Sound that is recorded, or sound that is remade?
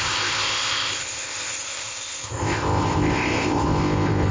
remade